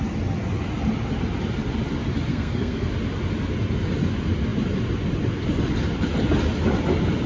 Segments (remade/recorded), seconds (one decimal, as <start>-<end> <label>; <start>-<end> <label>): 0.0-2.3 recorded; 2.3-2.9 remade; 2.9-7.3 recorded